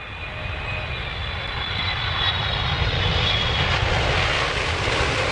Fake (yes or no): no